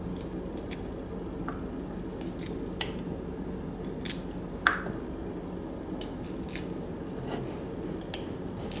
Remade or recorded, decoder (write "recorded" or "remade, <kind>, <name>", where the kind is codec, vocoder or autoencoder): recorded